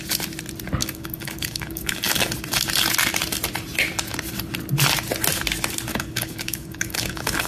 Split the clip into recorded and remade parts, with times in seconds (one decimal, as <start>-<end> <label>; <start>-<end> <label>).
0.0-0.8 recorded; 0.8-2.3 remade; 2.3-5.9 recorded; 5.9-7.5 remade